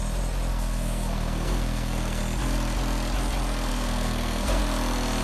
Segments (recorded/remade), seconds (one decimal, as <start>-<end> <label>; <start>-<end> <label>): 0.0-0.5 recorded; 0.5-2.2 remade; 2.2-3.7 recorded; 3.7-4.6 remade; 4.6-5.2 recorded